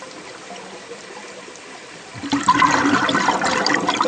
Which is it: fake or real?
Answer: fake